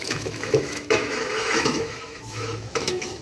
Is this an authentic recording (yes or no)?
no